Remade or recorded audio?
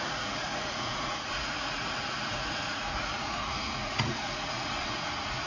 remade